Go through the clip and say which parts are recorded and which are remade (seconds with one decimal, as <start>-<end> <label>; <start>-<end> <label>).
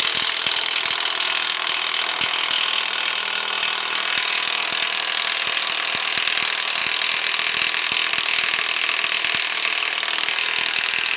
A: 0.0-11.2 recorded